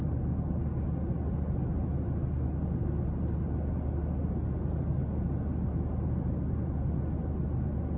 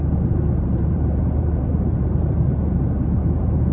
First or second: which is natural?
first